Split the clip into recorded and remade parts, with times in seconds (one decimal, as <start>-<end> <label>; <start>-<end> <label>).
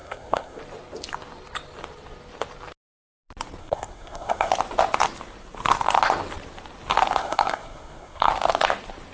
0.0-0.6 remade; 0.6-3.6 recorded; 3.6-4.5 remade; 4.5-7.2 recorded; 7.2-8.3 remade; 8.3-9.1 recorded